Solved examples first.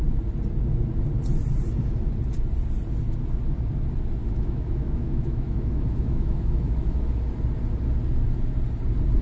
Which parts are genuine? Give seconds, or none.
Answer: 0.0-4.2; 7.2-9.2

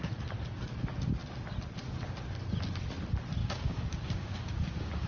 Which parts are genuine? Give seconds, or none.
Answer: 0.0-3.4

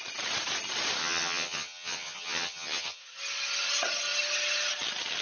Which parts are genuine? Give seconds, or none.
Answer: 0.0-1.0; 3.0-5.2

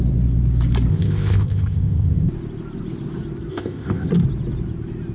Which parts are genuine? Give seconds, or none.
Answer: 0.0-0.9; 2.3-3.5; 4.1-5.1

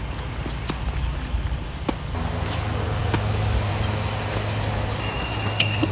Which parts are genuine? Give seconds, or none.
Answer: 0.0-5.0

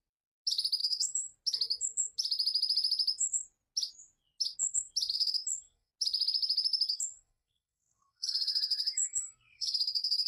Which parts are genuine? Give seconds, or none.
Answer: 0.0-0.8; 1.3-5.1; 5.9-6.9